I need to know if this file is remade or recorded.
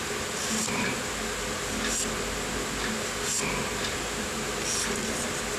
recorded